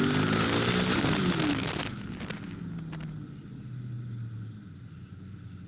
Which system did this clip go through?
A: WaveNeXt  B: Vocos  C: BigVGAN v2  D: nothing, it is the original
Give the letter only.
D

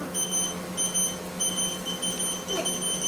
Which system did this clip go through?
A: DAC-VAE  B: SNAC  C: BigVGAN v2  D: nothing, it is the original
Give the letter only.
D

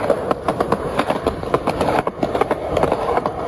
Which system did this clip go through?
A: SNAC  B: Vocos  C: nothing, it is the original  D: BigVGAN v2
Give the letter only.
C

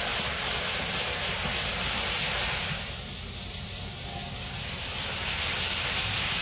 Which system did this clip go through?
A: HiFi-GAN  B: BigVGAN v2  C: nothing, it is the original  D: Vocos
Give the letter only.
C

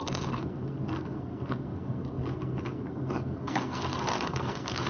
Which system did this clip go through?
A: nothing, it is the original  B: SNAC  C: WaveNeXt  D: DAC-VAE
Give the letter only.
B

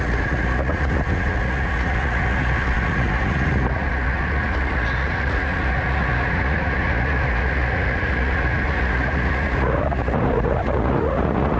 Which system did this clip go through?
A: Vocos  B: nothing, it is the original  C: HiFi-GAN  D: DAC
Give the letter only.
A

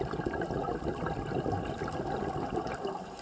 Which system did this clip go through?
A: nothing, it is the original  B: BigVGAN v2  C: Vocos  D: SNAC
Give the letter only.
A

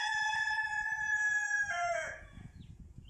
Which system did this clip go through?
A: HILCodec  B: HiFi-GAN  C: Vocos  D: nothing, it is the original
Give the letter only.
C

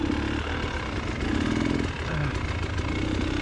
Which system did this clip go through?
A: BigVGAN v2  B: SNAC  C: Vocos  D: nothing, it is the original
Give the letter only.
D